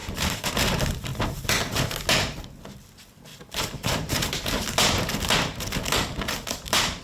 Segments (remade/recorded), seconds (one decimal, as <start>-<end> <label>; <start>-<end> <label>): 0.0-0.5 remade; 0.5-3.3 recorded; 3.3-4.7 remade; 4.7-7.0 recorded